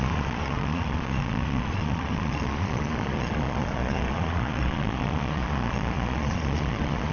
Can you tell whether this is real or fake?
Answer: fake